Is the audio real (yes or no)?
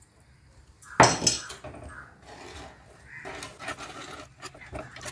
yes